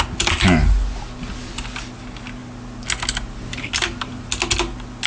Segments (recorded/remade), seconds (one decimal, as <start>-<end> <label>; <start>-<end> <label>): 0.0-5.1 recorded